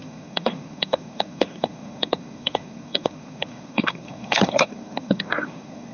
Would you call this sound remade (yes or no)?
yes